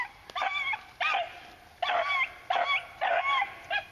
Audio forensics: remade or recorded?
recorded